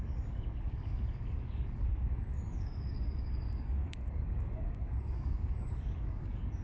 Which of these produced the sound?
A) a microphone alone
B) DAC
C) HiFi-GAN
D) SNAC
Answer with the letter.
B